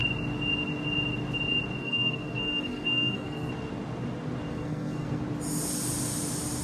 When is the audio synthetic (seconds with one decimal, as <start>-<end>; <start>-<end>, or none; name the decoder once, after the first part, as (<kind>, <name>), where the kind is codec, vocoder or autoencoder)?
1.8-3.5 (codec, SNAC); 4.5-5.2